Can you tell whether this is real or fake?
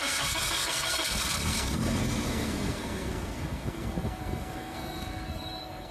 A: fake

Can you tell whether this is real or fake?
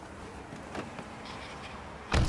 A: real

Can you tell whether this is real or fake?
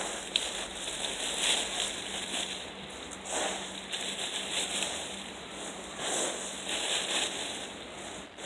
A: real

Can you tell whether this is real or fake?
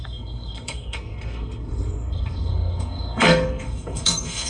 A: fake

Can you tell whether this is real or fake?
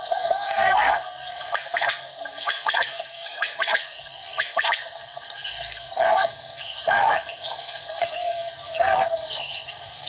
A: fake